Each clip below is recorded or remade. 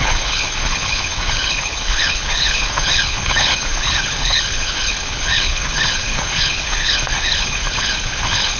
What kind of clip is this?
remade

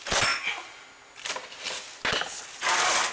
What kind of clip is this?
recorded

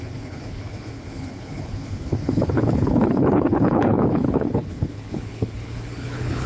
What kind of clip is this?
remade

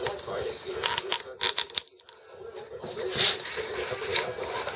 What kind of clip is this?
recorded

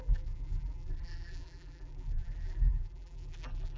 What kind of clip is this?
remade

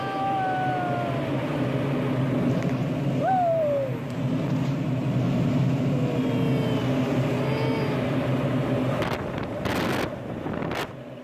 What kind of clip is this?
recorded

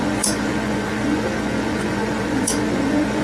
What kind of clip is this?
remade